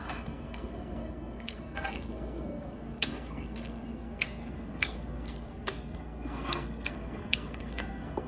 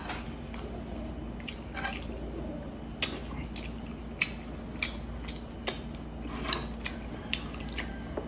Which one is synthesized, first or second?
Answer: first